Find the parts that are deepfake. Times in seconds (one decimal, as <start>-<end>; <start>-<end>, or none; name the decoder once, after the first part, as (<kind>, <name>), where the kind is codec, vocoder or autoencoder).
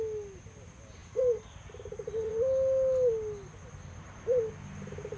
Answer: 1.0-2.3 (vocoder, BigVGAN v2)